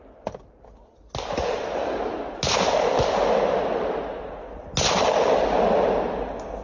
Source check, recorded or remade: recorded